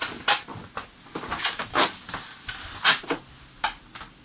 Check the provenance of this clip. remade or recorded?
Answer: recorded